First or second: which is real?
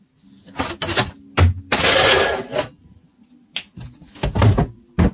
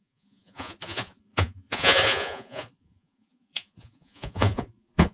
first